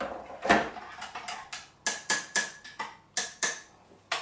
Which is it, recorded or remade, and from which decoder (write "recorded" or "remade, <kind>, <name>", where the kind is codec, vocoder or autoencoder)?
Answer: recorded